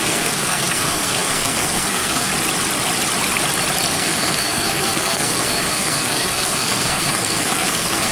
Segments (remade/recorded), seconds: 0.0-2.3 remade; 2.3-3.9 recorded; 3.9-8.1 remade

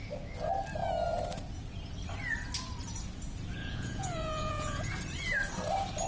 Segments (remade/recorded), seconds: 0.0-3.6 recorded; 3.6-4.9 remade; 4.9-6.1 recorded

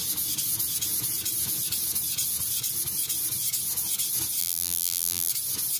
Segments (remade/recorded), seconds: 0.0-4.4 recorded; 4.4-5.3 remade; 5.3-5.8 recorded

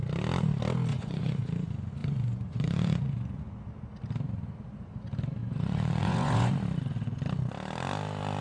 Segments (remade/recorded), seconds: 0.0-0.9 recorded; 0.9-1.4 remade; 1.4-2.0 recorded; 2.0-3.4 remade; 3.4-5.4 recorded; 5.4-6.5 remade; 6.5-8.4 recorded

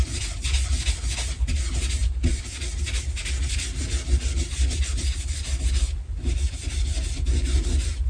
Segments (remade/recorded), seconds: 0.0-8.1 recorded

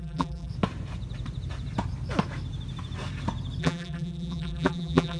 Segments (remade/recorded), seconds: 0.0-0.5 remade; 0.5-3.6 recorded; 3.6-5.2 remade

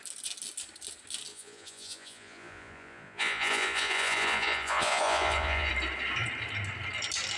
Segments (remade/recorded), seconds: 0.0-1.3 recorded; 1.3-5.7 remade; 5.7-7.4 recorded

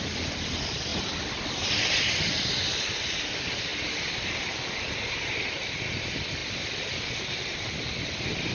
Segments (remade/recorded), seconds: 0.0-8.5 recorded